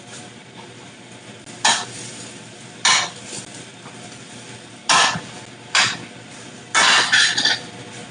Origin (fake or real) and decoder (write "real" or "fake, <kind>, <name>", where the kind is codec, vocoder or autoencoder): real